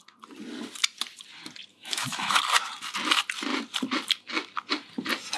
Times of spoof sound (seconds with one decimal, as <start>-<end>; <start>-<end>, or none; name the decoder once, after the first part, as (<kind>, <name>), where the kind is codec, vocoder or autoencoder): 1.7-2.4 (autoencoder, DAC-VAE)